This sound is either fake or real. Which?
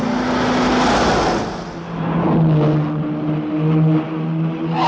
real